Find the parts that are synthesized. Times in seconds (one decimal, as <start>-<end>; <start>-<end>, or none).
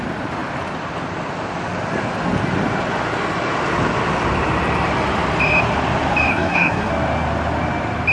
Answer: 6.3-6.9